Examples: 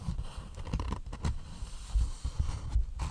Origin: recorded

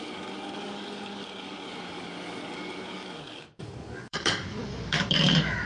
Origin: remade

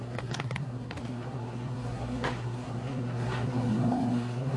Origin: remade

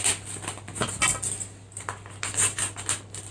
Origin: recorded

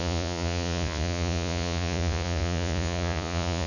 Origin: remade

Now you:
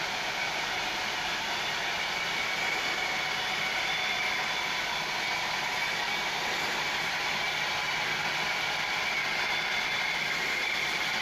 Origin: recorded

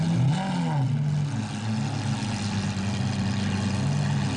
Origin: recorded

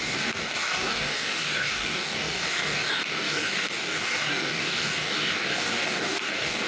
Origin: remade